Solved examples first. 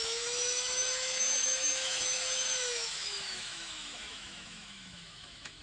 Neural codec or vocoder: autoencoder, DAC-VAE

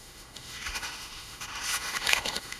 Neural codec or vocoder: autoencoder, DAC-VAE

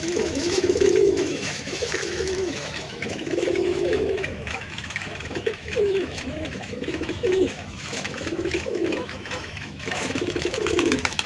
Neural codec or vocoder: autoencoder, DAC-VAE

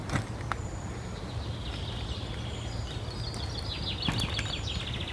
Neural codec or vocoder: none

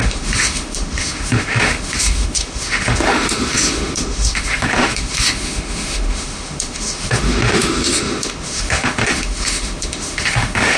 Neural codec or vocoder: autoencoder, DAC-VAE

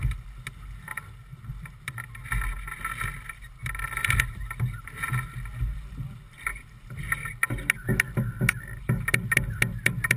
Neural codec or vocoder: none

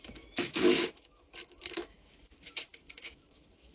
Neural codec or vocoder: autoencoder, DAC-VAE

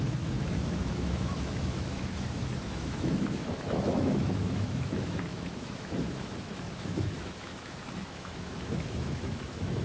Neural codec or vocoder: autoencoder, DAC-VAE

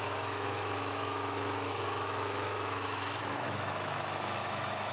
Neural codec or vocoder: autoencoder, DAC-VAE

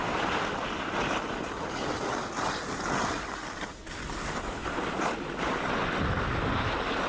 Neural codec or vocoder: none